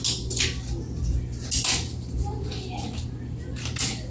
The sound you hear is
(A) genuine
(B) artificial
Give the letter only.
A